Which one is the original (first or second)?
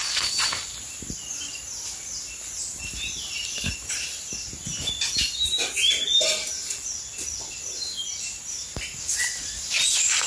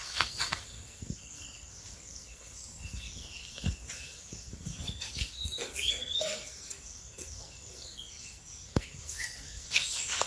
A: first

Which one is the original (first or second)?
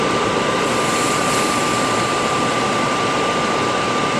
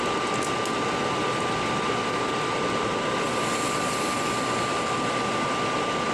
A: second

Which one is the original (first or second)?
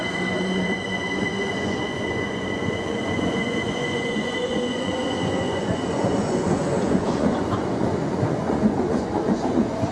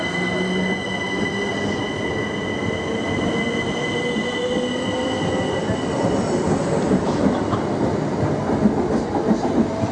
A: second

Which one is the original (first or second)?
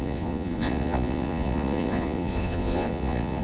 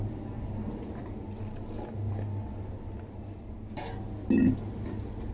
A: second